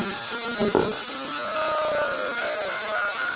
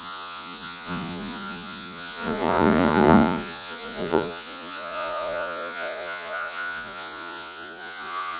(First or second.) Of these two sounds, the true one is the first